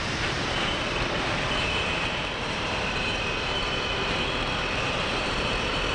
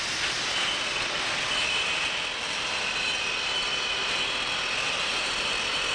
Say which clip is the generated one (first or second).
first